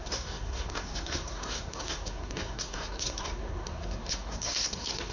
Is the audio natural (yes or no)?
no